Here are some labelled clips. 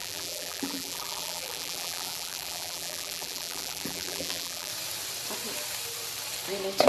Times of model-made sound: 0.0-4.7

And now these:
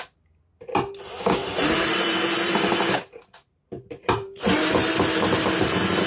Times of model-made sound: 1.4-4.9

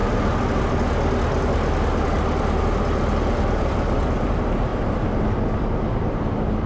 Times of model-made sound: 2.6-6.7

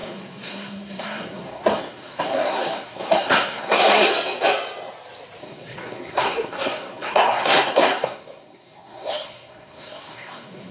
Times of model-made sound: 0.0-4.1; 5.4-10.7

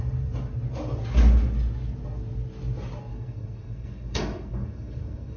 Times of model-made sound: 3.1-5.4

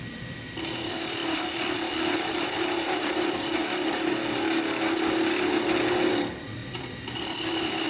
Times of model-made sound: 0.0-3.6; 6.1-7.9